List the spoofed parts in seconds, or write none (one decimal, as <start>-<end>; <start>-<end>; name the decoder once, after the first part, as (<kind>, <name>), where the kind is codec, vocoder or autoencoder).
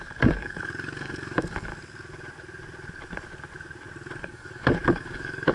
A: 0.0-1.7 (codec, DAC); 4.2-5.5